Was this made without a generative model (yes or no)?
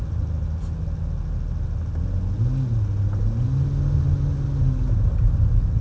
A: yes